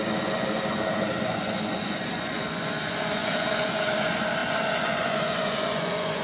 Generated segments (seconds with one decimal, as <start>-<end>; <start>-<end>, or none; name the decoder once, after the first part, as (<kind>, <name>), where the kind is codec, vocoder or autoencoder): 0.0-6.2 (vocoder, Vocos)